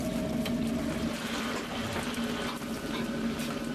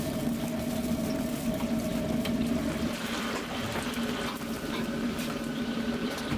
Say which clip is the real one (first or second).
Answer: first